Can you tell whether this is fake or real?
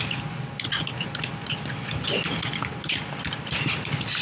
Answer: real